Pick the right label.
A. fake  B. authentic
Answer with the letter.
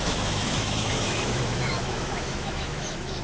A